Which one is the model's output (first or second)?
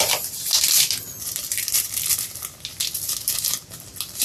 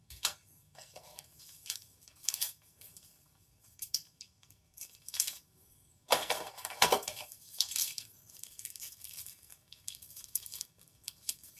second